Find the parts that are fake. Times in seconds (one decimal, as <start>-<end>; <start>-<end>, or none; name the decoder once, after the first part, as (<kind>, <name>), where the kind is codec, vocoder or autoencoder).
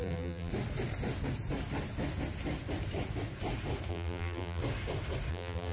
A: 0.0-0.5 (vocoder, BigVGAN v2); 3.9-4.6; 5.3-5.7